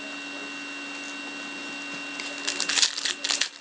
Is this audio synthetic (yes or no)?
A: no